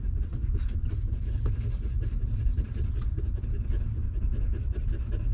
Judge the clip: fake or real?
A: real